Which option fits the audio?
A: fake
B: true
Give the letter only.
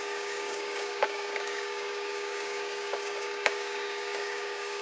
A